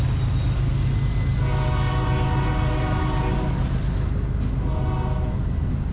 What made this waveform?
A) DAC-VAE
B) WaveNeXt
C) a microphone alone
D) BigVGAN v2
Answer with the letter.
C